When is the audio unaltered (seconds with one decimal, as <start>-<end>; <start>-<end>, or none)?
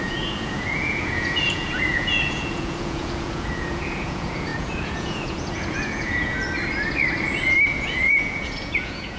6.4-7.7